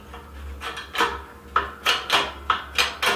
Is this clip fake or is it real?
real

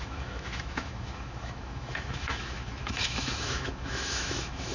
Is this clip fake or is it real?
fake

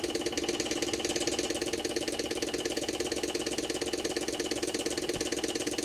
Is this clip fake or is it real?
real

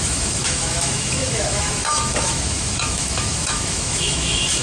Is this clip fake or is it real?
fake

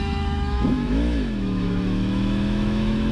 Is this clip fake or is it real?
fake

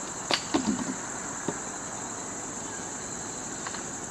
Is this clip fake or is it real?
real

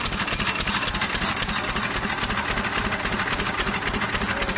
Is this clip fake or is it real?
real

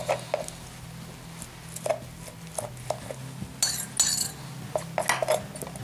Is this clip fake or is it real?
real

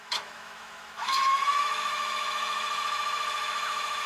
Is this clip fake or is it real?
fake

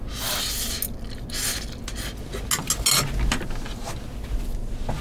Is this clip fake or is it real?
real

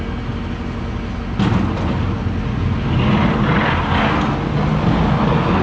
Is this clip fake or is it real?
real